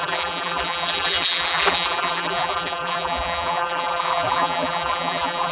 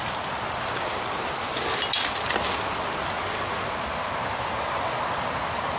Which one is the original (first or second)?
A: second